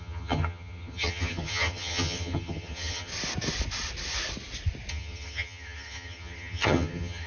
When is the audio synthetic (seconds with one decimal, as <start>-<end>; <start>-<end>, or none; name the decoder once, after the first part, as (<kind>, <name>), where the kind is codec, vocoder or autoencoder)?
0.0-3.1 (vocoder, HiFi-GAN); 4.9-7.3

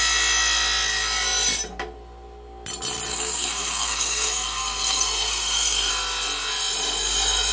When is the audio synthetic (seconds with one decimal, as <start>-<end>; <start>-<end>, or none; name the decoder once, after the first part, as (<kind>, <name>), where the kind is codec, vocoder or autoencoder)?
3.1-5.9 (codec, SNAC)

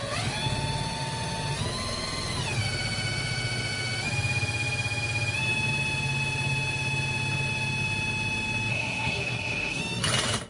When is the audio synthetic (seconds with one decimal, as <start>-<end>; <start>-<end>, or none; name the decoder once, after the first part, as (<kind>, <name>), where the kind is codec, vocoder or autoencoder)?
8.7-9.8 (codec, SNAC)

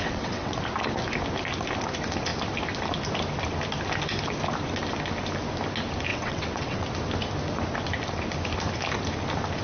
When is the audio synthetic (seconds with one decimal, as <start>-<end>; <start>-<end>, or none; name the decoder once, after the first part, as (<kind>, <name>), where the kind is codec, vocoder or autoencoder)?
0.0-0.6 (vocoder, WaveNeXt); 6.1-6.9

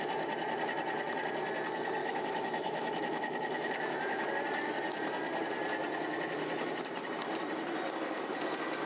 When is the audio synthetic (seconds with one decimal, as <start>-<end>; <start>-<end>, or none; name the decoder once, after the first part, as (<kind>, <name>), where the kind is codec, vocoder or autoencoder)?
2.0-4.3 (autoencoder, DAC-VAE)

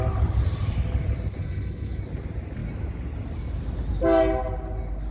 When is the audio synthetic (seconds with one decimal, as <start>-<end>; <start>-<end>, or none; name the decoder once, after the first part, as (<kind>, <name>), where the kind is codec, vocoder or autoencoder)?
1.4-2.0 (codec, HILCodec)

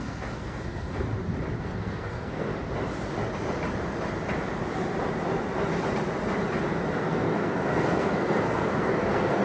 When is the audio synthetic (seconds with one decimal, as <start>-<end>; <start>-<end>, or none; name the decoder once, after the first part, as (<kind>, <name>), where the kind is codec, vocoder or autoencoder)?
0.0-1.1 (codec, SNAC); 1.6-2.5; 7.0-9.4